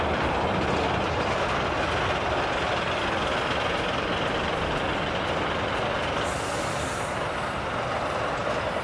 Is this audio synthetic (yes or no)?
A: no